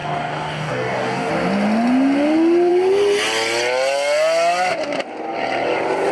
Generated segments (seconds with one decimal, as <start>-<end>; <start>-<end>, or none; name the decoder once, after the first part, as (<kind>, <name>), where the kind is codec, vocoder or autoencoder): 0.0-1.3 (codec, DAC)